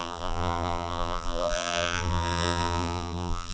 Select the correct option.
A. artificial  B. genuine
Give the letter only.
A